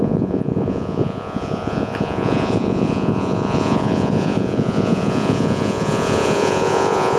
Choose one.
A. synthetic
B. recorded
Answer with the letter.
A